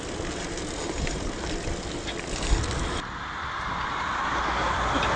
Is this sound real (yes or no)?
yes